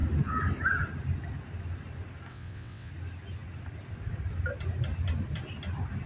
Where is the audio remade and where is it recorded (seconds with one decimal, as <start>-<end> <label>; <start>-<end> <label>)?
0.0-2.3 recorded; 2.3-2.9 remade; 2.9-6.1 recorded

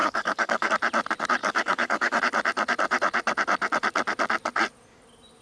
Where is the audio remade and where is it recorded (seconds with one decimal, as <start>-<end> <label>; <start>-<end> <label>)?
0.0-0.7 remade; 0.7-1.4 recorded; 1.4-2.2 remade; 2.2-5.4 recorded

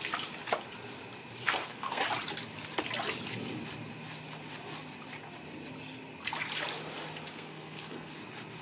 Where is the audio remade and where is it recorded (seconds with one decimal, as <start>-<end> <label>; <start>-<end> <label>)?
0.0-1.4 recorded; 1.4-2.0 remade; 2.0-7.3 recorded; 7.3-8.1 remade; 8.1-8.6 recorded

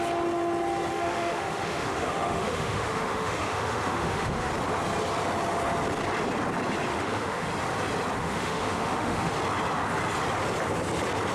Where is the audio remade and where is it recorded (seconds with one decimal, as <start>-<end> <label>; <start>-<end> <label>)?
0.0-0.9 recorded; 0.9-4.5 remade; 4.5-6.9 recorded; 6.9-7.5 remade; 7.5-8.2 recorded; 8.2-9.3 remade; 9.3-11.3 recorded